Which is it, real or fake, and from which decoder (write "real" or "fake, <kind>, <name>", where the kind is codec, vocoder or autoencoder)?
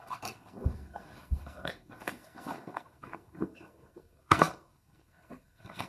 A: fake, codec, SNAC